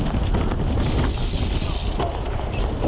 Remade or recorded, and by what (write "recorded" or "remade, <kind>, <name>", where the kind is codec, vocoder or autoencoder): recorded